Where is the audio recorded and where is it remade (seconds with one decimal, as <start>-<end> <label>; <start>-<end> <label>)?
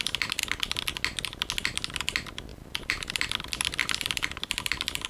0.0-0.4 remade; 0.4-2.0 recorded; 2.0-5.1 remade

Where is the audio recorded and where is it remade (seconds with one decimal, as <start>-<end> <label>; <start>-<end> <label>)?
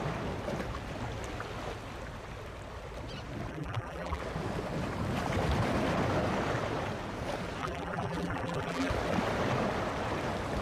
0.0-3.5 recorded; 3.5-4.2 remade; 4.2-7.6 recorded; 7.6-8.9 remade; 8.9-10.6 recorded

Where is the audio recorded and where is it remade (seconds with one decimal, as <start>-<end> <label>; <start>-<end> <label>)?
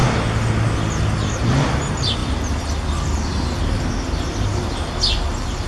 0.0-5.7 recorded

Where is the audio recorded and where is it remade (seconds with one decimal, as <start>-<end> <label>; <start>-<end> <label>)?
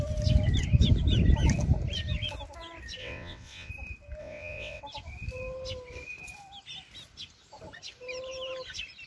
0.0-3.0 recorded; 3.0-3.7 remade; 3.7-4.2 recorded; 4.2-4.8 remade; 4.8-9.1 recorded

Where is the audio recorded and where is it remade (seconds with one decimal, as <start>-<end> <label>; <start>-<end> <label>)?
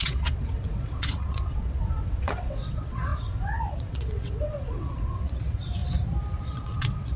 0.0-5.8 remade; 5.8-6.4 recorded; 6.4-7.2 remade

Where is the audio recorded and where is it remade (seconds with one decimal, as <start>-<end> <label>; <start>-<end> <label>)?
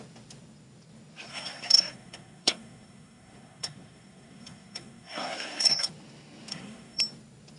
0.0-1.3 recorded; 1.3-5.9 remade; 5.9-6.5 recorded; 6.5-7.0 remade; 7.0-7.6 recorded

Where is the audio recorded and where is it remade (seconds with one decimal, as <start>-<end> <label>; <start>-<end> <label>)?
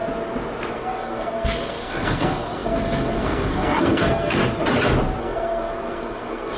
0.0-0.7 recorded; 0.7-4.4 remade; 4.4-5.2 recorded; 5.2-6.6 remade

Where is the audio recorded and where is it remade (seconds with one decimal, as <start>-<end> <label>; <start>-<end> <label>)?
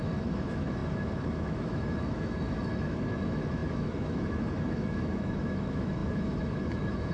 0.0-7.1 remade